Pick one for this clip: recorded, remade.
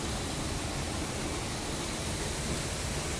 recorded